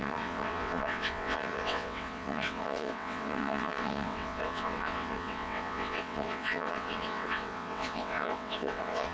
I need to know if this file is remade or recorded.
remade